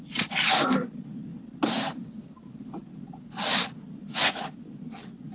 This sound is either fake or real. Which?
real